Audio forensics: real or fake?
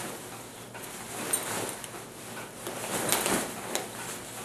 real